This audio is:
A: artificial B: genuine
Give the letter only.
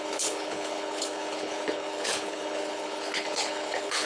A